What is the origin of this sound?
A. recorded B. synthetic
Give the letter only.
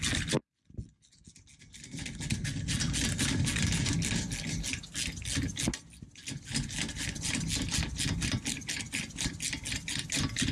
A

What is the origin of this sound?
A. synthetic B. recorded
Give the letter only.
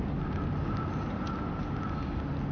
B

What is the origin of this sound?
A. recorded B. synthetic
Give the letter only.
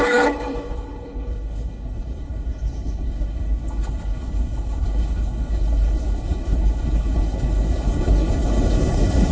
B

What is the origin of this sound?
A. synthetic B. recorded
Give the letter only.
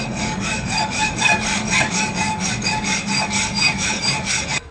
A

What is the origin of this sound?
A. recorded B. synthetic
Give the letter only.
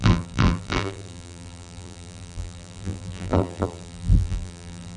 B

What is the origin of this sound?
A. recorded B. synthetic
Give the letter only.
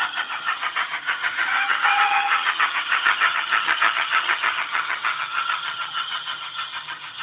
B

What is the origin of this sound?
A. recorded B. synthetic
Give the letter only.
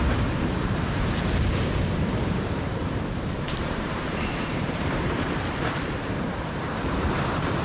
B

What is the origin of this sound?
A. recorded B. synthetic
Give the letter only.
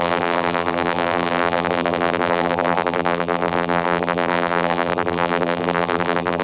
B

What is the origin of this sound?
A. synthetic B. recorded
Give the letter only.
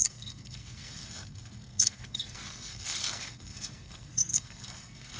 A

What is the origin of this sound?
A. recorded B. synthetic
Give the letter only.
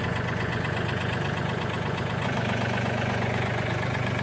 B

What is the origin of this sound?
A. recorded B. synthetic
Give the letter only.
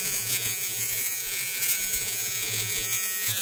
B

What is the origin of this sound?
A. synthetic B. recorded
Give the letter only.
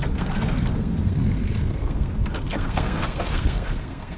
A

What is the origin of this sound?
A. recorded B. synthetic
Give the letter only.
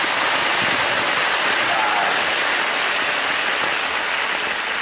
A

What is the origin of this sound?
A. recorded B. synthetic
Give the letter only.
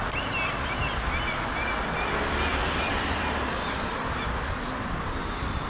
A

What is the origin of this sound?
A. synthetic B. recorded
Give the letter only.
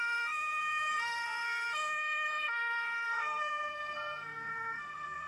A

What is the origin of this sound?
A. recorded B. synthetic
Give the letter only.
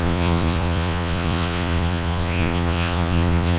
B